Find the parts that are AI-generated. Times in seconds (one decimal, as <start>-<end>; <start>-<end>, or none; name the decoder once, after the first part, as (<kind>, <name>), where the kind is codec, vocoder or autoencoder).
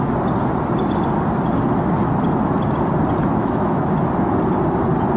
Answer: 3.4-3.9 (autoencoder, DAC-VAE)